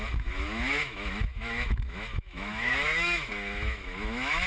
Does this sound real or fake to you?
fake